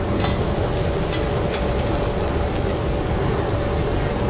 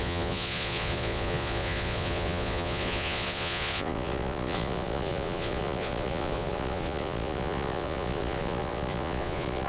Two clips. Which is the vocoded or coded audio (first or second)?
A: second